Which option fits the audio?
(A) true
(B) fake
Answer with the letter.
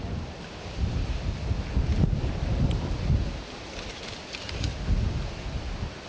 A